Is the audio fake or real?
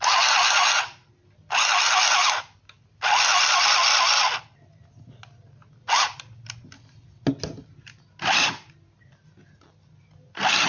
real